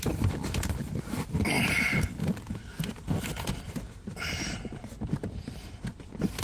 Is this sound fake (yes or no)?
yes